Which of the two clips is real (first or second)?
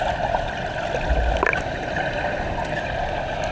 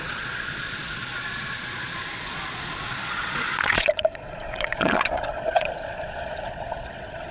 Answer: first